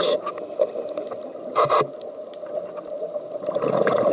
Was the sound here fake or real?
real